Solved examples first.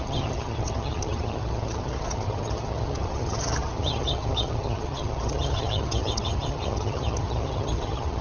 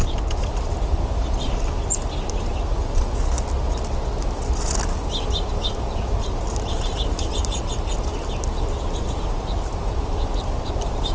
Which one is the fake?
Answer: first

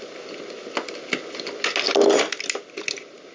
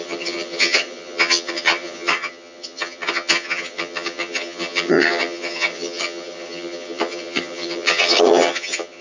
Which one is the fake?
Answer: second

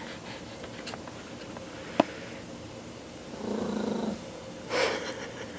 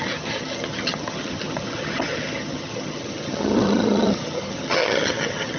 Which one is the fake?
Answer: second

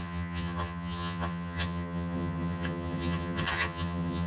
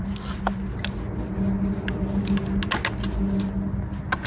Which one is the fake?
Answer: first